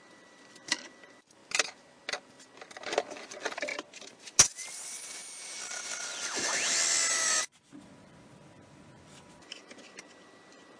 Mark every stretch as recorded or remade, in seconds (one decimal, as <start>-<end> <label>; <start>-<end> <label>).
0.0-1.4 remade; 1.4-3.1 recorded; 3.1-3.7 remade; 3.7-4.7 recorded; 4.7-6.1 remade; 6.1-7.2 recorded; 7.2-10.8 remade